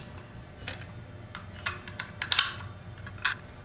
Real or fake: real